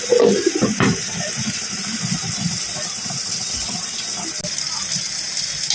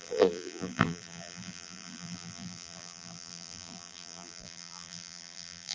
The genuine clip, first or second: first